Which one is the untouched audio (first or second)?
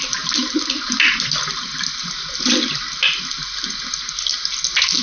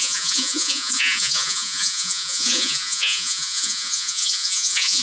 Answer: first